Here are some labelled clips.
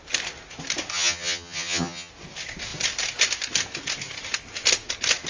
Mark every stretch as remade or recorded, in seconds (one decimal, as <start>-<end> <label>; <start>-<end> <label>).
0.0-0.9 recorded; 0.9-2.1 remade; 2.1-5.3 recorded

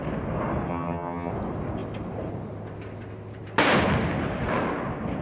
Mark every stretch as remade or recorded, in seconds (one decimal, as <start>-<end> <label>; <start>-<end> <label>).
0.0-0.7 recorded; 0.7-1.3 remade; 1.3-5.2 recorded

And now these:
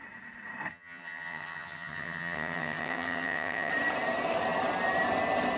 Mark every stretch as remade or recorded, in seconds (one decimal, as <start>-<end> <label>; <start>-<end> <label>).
0.0-0.7 recorded; 0.7-3.7 remade; 3.7-5.6 recorded

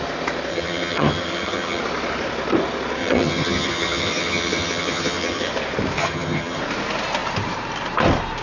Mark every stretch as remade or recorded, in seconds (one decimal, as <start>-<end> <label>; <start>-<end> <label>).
0.0-0.5 recorded; 0.5-1.8 remade; 1.8-3.0 recorded; 3.0-5.5 remade; 5.5-6.0 recorded; 6.0-6.6 remade; 6.6-8.4 recorded

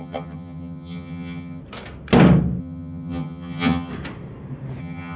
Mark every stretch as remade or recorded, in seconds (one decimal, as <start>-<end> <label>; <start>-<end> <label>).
0.0-1.6 remade; 1.6-2.6 recorded; 2.6-3.9 remade; 3.9-4.8 recorded; 4.8-5.2 remade